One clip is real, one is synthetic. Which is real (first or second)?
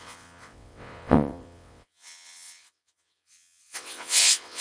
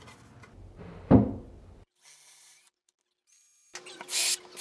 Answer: second